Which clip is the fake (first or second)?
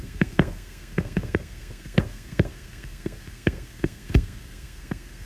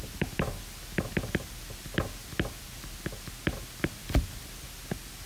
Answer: first